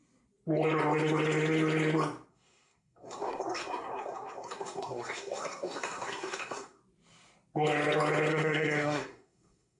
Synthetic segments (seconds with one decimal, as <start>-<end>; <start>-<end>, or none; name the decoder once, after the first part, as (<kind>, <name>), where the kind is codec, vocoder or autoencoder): 2.3-6.8 (codec, SNAC); 8.3-9.8